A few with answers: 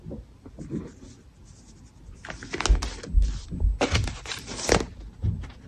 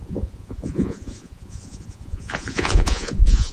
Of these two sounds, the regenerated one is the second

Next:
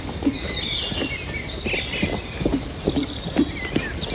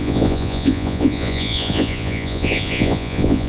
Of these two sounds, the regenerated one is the second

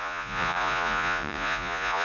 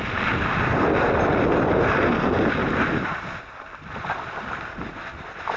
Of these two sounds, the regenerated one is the first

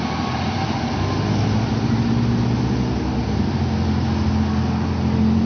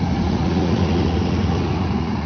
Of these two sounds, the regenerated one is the second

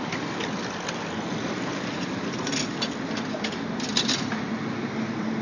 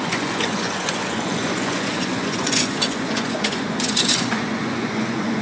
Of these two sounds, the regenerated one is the second